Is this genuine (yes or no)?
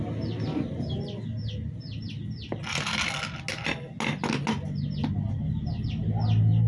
yes